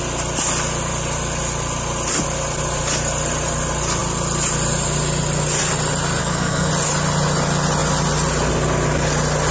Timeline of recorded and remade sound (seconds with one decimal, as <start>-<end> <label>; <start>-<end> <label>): 0.0-6.2 recorded; 6.2-6.7 remade; 6.7-9.5 recorded